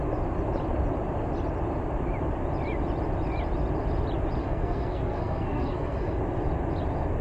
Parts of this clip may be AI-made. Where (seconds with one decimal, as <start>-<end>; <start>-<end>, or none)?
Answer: 4.4-6.2